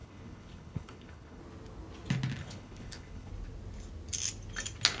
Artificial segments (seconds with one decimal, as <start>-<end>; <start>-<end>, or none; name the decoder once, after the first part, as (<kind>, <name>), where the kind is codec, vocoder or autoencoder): 0.0-1.4 (codec, HILCodec); 2.4-3.3